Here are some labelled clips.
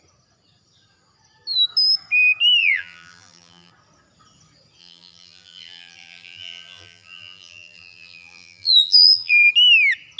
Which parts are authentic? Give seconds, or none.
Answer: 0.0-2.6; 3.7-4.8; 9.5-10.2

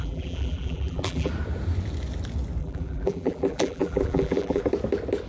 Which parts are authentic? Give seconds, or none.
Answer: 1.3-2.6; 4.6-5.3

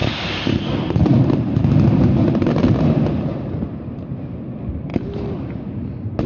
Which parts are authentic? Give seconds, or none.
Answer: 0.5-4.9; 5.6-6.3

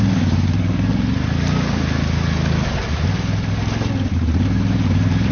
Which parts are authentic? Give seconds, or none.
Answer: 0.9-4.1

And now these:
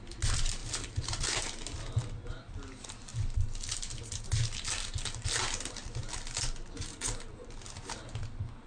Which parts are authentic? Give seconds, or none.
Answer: 0.0-0.6; 1.2-8.7

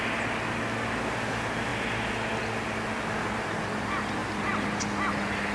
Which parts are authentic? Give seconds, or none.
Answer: 0.0-5.5

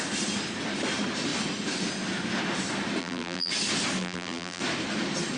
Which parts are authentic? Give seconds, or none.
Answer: 0.0-3.0; 3.5-4.0; 4.6-5.4